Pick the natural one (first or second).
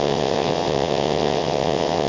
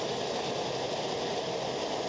second